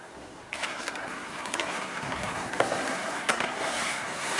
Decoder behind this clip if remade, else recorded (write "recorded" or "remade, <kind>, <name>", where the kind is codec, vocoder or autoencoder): remade, codec, SNAC